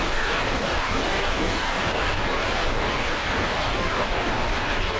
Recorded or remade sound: remade